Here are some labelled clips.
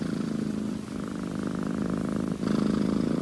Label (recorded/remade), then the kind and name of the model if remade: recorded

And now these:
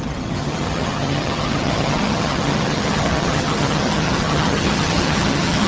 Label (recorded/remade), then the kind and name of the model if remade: remade, vocoder, HiFi-GAN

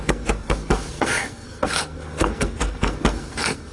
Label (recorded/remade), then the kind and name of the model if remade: remade, codec, SNAC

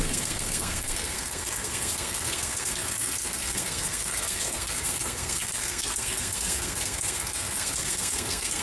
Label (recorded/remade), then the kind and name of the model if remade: remade, codec, SNAC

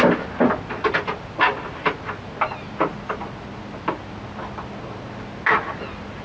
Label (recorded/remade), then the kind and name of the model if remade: recorded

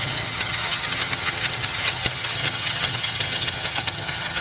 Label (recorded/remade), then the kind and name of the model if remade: remade, vocoder, HiFi-GAN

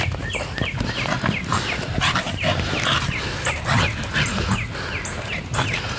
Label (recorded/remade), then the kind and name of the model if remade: recorded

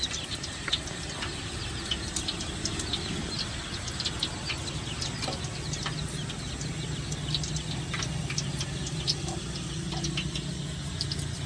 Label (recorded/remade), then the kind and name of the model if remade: recorded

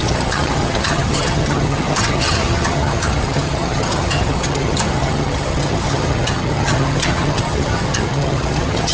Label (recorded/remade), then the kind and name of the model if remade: remade, vocoder, HiFi-GAN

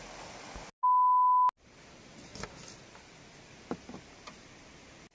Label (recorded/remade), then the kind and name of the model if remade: recorded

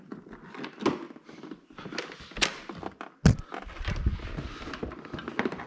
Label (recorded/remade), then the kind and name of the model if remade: recorded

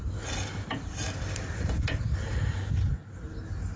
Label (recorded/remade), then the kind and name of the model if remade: recorded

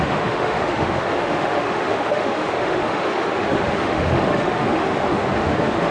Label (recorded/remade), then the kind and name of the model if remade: remade, autoencoder, DAC-VAE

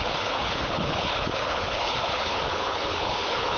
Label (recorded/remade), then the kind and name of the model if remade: remade, codec, HILCodec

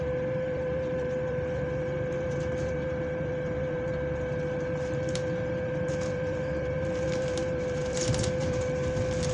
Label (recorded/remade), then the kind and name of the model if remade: remade, vocoder, BigVGAN v2